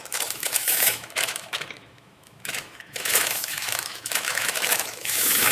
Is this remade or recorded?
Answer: remade